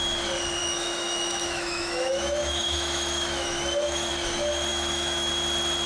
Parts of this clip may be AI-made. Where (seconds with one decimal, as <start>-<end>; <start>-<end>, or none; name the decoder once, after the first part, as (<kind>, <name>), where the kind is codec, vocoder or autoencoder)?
0.6-4.1 (autoencoder, DAC-VAE); 4.7-5.3